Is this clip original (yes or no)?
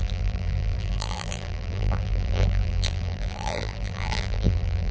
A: no